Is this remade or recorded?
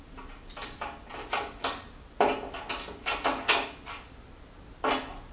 recorded